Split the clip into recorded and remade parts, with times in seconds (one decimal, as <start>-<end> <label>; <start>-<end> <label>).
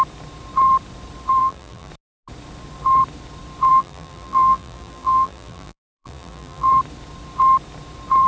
0.0-1.4 recorded; 1.4-1.9 remade; 1.9-3.7 recorded; 3.7-6.7 remade; 6.7-8.3 recorded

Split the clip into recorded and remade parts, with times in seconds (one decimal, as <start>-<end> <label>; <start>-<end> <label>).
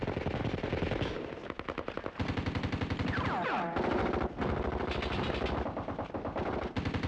0.0-7.1 recorded